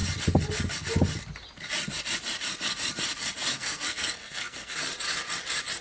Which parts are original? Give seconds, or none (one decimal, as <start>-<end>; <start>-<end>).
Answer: 0.0-3.5; 4.8-5.8